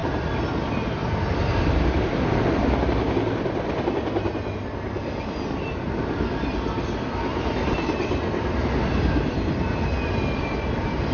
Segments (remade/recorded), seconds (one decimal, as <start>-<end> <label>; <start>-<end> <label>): 0.0-7.3 recorded; 7.3-8.6 remade; 8.6-11.1 recorded

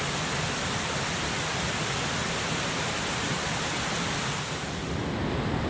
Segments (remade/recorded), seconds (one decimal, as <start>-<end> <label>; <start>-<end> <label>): 0.0-5.7 recorded

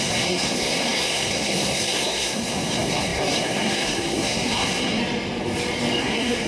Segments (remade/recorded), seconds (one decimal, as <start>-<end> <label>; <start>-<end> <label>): 0.0-5.0 remade; 5.0-6.0 recorded; 6.0-6.5 remade

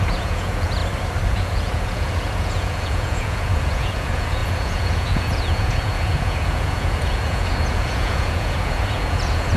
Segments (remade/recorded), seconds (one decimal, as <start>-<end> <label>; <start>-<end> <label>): 0.0-0.8 remade; 0.8-1.3 recorded; 1.3-9.6 remade

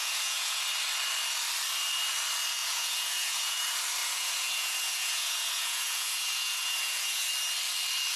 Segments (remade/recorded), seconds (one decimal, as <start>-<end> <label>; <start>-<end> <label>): 0.0-0.6 remade; 0.6-2.6 recorded; 2.6-3.6 remade; 3.6-4.0 recorded; 4.0-7.3 remade; 7.3-8.2 recorded

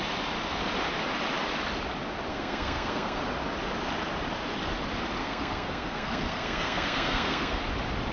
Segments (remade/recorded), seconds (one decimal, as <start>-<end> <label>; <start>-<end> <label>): 0.0-2.3 recorded; 2.3-3.2 remade; 3.2-5.2 recorded; 5.2-7.6 remade; 7.6-8.1 recorded

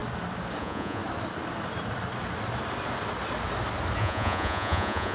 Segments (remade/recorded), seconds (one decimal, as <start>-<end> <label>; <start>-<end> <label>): 0.0-0.6 recorded; 0.6-1.0 remade; 1.0-4.0 recorded; 4.0-5.1 remade

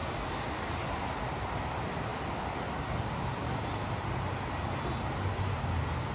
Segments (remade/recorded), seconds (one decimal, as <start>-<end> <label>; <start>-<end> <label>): 0.0-2.1 recorded; 2.1-5.0 remade; 5.0-6.1 recorded